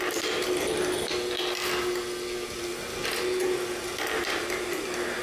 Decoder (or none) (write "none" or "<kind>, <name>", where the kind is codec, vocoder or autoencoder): none